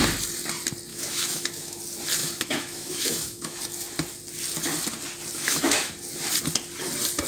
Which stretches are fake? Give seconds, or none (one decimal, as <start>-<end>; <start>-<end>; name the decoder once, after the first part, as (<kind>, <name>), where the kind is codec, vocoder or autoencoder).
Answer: 0.9-1.8 (autoencoder, DAC-VAE); 2.2-3.6; 5.4-5.9